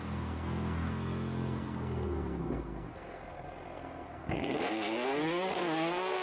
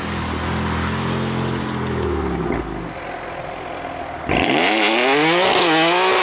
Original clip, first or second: second